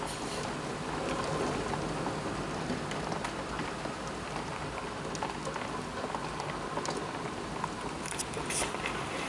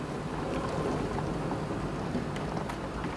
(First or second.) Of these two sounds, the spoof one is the second